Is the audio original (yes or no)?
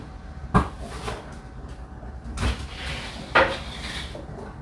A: yes